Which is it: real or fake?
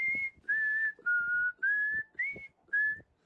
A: real